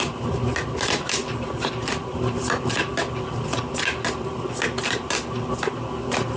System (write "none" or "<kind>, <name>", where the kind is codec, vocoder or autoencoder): none